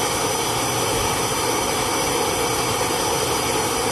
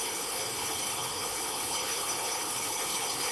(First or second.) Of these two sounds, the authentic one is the first